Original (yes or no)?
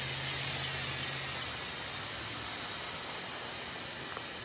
yes